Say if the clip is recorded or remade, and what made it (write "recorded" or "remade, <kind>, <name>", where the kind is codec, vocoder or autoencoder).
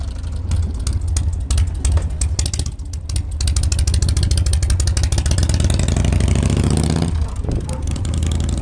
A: recorded